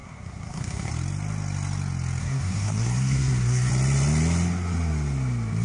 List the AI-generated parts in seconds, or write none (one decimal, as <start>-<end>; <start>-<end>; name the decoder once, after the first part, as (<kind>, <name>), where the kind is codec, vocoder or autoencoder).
0.0-0.9 (codec, SNAC); 2.2-3.7